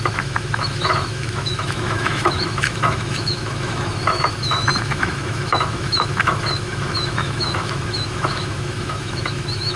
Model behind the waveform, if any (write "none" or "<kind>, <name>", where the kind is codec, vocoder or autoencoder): autoencoder, DAC-VAE